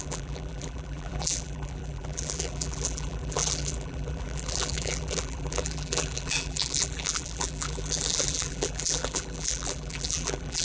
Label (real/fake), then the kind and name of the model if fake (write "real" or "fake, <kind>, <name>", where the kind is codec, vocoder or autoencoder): fake, vocoder, BigVGAN v2